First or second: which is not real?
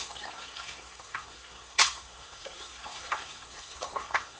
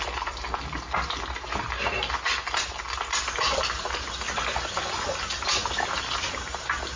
first